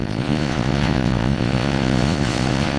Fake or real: fake